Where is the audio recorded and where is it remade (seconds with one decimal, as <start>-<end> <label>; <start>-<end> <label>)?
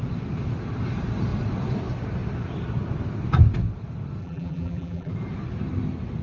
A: 0.0-4.2 recorded; 4.2-5.1 remade; 5.1-6.2 recorded